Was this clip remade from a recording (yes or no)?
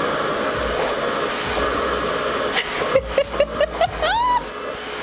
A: no